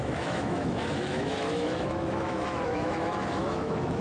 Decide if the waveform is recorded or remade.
remade